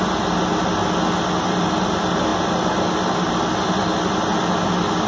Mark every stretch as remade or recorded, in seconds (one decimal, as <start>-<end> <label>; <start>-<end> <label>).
0.0-5.1 recorded